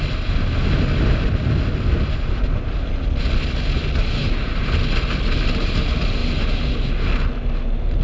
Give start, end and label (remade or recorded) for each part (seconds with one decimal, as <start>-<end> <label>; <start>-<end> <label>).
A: 0.0-8.0 recorded